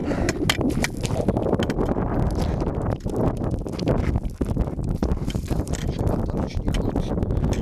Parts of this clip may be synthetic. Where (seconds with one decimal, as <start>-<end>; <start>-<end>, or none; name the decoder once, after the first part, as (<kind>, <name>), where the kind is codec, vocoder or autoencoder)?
2.7-3.8 (vocoder, BigVGAN v2); 5.0-6.0